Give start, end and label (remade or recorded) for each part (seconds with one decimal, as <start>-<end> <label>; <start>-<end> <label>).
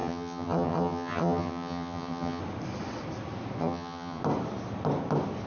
0.0-2.4 remade; 2.4-3.6 recorded; 3.6-4.2 remade; 4.2-5.5 recorded